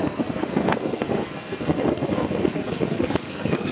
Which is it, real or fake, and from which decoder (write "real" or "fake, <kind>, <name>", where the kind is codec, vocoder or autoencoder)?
fake, codec, SNAC